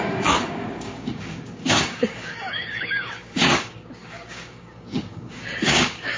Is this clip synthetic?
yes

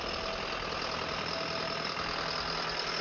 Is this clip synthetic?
no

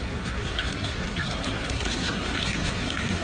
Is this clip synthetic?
yes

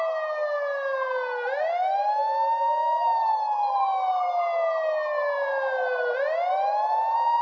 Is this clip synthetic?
no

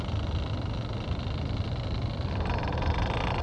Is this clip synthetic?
no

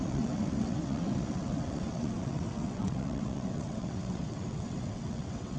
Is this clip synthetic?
yes